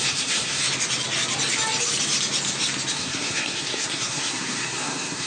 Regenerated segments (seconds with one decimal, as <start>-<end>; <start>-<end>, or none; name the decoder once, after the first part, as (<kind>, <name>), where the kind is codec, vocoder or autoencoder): 0.0-0.6 (codec, SNAC); 2.9-5.3